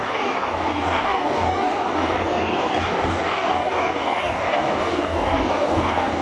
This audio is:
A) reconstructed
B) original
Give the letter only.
A